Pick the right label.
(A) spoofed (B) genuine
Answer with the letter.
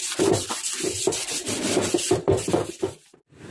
B